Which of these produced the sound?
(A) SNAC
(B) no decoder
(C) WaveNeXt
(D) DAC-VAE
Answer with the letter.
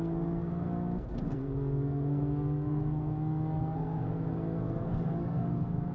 A